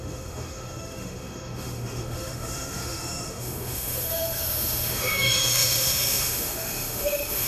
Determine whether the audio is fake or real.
fake